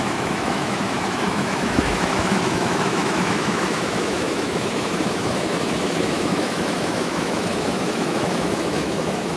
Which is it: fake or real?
fake